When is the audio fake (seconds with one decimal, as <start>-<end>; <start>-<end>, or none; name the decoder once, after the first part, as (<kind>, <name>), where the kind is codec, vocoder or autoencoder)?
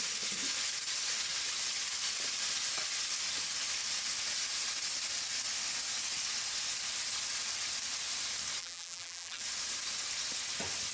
8.6-9.4 (vocoder, BigVGAN v2)